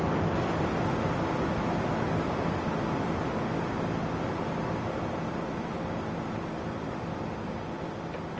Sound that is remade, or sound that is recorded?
recorded